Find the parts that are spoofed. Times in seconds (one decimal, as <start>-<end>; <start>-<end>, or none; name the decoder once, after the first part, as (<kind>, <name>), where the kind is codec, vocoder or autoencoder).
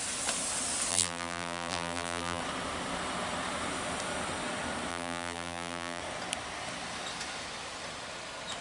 0.9-2.4 (vocoder, BigVGAN v2); 4.9-6.0